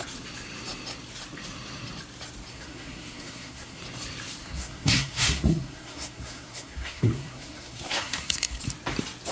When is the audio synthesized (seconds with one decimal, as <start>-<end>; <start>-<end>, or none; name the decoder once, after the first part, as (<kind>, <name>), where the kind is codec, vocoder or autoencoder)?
2.5-3.8 (codec, SNAC); 4.4-8.6